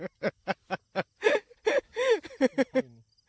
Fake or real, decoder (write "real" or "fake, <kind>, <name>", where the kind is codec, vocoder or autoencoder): real